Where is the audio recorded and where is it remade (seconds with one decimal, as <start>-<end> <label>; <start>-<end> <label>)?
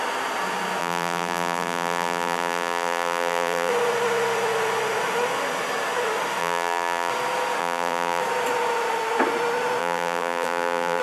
0.0-0.8 recorded; 0.8-3.7 remade; 3.7-6.4 recorded; 6.4-7.1 remade; 7.1-7.6 recorded; 7.6-8.2 remade; 8.2-9.8 recorded; 9.8-11.0 remade